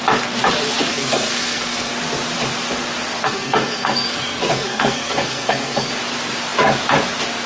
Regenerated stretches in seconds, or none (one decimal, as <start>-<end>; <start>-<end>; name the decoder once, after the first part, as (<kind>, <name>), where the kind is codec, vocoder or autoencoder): 0.9-1.9 (codec, SNAC); 3.2-5.9